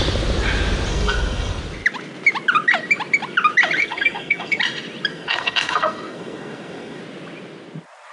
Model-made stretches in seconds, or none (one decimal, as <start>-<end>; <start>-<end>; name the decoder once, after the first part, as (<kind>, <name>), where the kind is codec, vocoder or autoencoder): 0.9-1.6 (codec, SNAC); 3.8-4.6; 5.1-7.0